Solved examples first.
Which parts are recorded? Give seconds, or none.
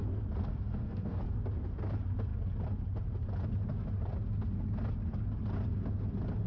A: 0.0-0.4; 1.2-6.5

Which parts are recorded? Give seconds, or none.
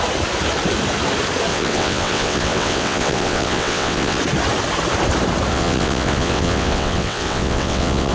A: 0.0-1.5; 4.2-5.5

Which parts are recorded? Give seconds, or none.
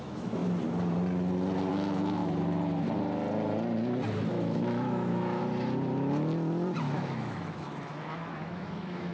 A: 0.4-1.7; 2.2-4.3; 5.4-6.8